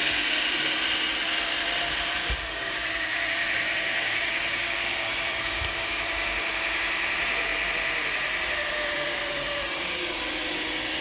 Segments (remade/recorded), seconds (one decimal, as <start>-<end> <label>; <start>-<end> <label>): 0.0-2.2 recorded; 2.2-6.0 remade; 6.0-9.1 recorded; 9.1-10.1 remade; 10.1-11.0 recorded